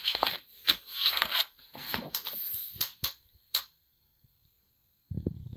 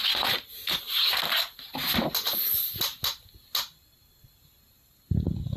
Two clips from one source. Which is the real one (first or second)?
second